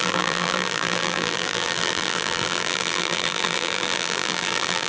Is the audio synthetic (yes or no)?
yes